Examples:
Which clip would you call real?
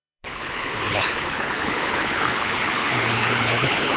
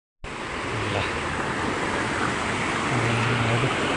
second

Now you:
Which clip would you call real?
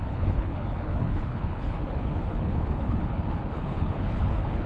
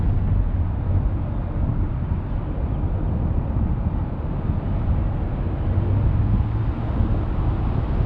second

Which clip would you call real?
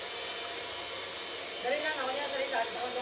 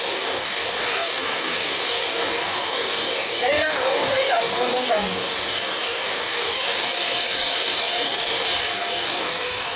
first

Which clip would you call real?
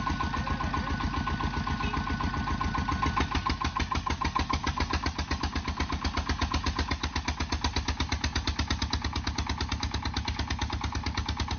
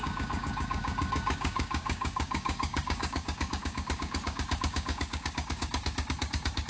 first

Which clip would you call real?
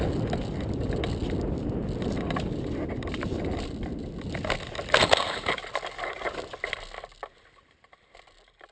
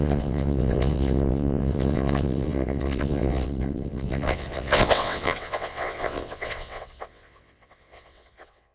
first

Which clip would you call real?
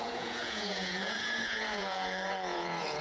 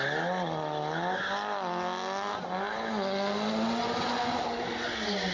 second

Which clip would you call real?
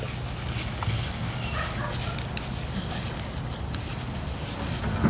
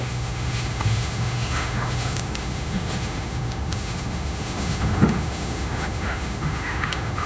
first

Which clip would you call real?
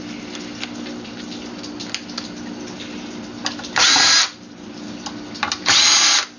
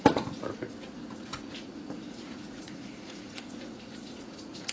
first